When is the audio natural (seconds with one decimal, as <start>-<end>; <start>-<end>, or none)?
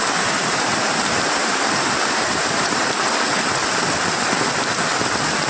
0.0-0.4; 3.0-5.5